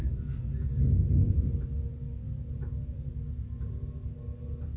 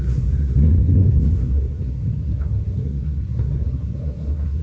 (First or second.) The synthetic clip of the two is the second